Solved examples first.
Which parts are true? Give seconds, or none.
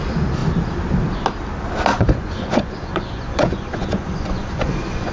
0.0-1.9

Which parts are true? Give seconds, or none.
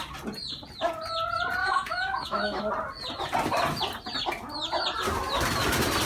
0.0-1.6; 2.6-6.1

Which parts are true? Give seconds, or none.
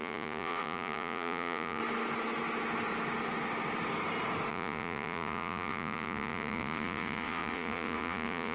1.8-4.5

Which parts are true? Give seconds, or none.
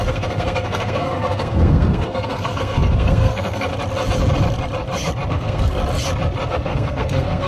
3.7-5.3; 5.8-6.5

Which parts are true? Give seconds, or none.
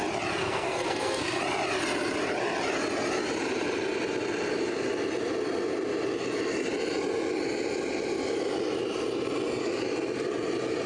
0.0-0.4; 1.4-10.9